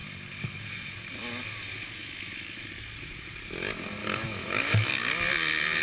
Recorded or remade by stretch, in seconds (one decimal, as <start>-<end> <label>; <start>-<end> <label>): 0.0-2.0 recorded; 2.0-2.7 remade; 2.7-4.0 recorded; 4.0-4.9 remade; 4.9-5.8 recorded